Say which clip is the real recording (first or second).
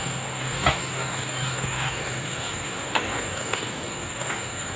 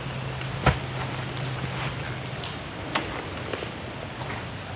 second